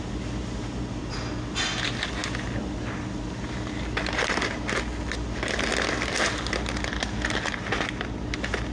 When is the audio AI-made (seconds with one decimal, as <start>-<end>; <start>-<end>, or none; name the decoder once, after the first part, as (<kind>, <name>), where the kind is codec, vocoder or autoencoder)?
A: none